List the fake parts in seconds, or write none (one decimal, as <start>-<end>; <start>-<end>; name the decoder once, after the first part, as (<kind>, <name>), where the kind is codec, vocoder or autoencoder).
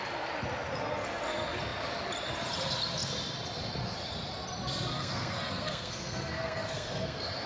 4.9-7.5 (codec, SNAC)